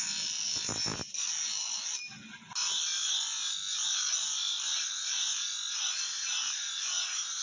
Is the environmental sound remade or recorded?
recorded